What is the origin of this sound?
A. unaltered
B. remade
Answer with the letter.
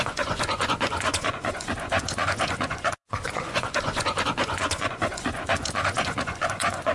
B